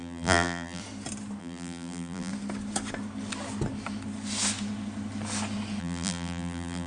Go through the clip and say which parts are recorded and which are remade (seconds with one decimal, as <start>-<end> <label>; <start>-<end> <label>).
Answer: 0.0-0.8 remade; 0.8-1.4 recorded; 1.4-2.3 remade; 2.3-5.8 recorded; 5.8-6.9 remade